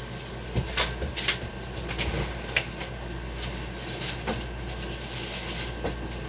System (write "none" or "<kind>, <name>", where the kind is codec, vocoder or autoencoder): none